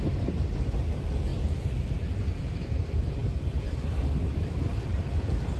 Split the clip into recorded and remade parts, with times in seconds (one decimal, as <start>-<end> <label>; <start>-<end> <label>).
0.0-5.6 recorded